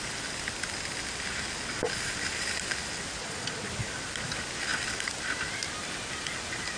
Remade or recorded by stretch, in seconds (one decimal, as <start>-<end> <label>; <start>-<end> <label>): 0.0-3.2 recorded; 3.2-3.7 remade; 3.7-6.8 recorded